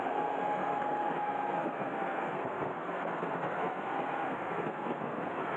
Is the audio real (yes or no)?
no